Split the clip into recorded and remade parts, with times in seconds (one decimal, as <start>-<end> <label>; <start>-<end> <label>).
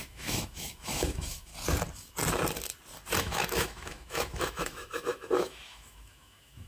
0.0-1.5 remade; 1.5-3.2 recorded; 3.2-6.7 remade